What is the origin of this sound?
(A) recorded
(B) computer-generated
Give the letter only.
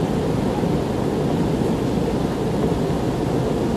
A